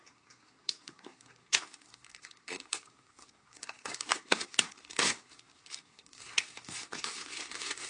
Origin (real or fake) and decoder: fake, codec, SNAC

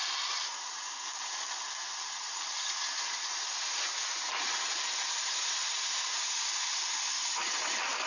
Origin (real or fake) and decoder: real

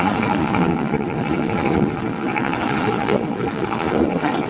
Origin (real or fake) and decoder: fake, vocoder, Vocos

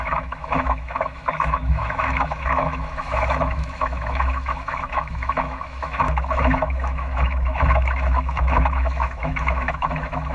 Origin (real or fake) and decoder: fake, autoencoder, DAC-VAE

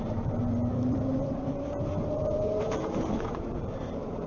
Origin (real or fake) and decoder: fake, vocoder, BigVGAN v2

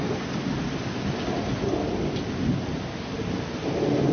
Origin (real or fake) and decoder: real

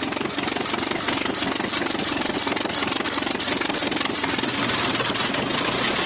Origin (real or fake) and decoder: real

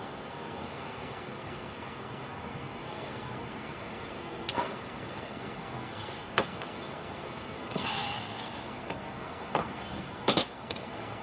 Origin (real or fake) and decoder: fake, codec, SNAC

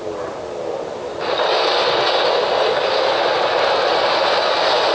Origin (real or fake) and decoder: real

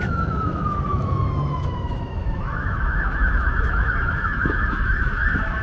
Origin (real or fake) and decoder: fake, autoencoder, DAC-VAE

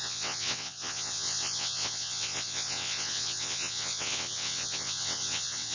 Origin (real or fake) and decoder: fake, vocoder, WaveNeXt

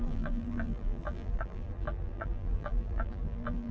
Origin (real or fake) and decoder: fake, vocoder, BigVGAN v2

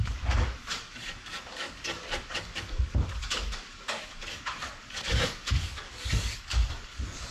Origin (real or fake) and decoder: fake, codec, DAC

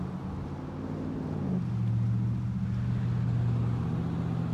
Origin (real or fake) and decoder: real